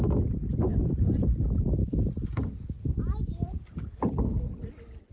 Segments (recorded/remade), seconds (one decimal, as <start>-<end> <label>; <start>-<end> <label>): 0.0-5.1 recorded